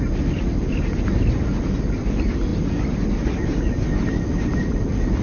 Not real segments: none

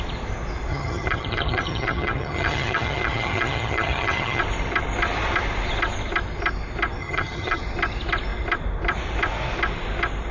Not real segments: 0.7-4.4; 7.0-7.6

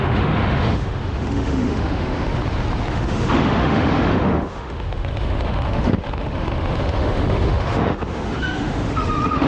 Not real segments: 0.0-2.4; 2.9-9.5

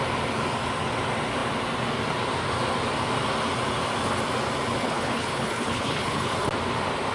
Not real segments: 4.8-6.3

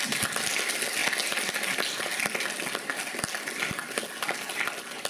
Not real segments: none

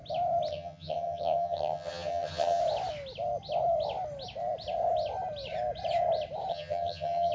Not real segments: 0.5-2.6; 6.5-7.3

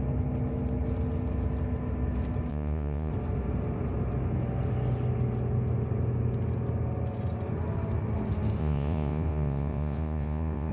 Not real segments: 2.5-3.1; 8.6-10.7